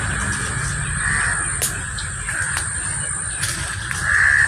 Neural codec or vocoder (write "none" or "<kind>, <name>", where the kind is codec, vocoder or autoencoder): none